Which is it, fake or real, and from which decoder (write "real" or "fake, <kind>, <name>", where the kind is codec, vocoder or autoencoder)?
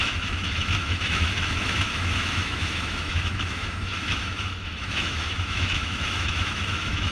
fake, autoencoder, DAC-VAE